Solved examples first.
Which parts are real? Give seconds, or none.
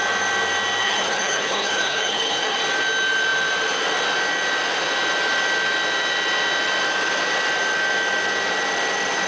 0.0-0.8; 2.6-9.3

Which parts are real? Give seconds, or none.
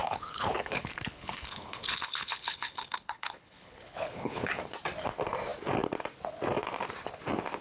4.6-7.6